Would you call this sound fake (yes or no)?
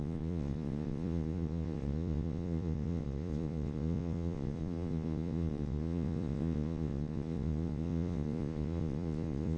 yes